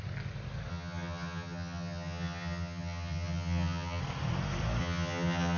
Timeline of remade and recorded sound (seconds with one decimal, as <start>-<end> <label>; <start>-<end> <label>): 0.0-0.7 recorded; 0.7-4.0 remade; 4.0-4.8 recorded; 4.8-5.6 remade

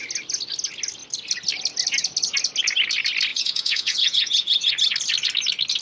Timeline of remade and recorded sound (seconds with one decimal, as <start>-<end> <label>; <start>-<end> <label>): 0.0-3.3 recorded; 3.3-4.7 remade; 4.7-5.8 recorded